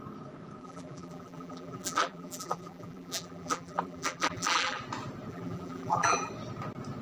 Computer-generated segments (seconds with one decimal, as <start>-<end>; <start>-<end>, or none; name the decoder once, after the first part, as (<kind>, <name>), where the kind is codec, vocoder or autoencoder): 0.6-4.8 (vocoder, BigVGAN v2); 5.3-6.3